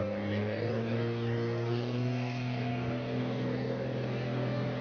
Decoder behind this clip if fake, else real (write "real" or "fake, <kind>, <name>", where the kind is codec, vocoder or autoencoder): fake, codec, DAC